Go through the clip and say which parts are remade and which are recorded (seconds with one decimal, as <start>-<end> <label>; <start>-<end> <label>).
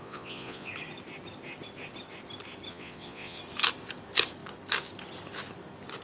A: 0.0-0.7 remade; 0.7-2.7 recorded; 2.7-3.4 remade; 3.4-6.0 recorded